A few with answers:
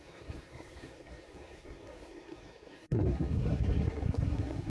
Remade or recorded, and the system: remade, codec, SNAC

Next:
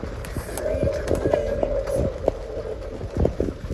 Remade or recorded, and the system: recorded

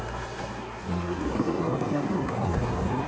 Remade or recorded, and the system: remade, codec, SNAC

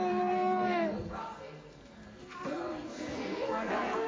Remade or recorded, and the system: remade, codec, SNAC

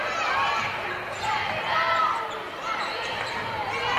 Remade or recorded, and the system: recorded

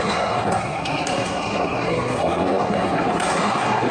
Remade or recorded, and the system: remade, codec, SNAC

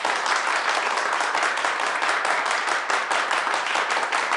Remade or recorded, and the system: recorded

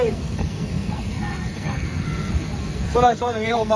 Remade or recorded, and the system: remade, codec, SNAC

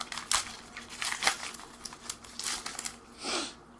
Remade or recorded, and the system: recorded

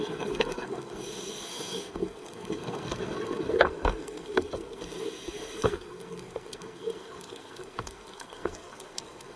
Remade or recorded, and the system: remade, codec, SNAC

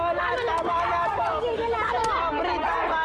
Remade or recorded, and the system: recorded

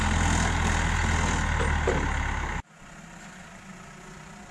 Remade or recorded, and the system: recorded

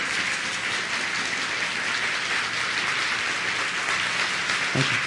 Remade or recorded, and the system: recorded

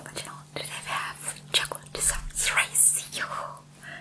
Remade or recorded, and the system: recorded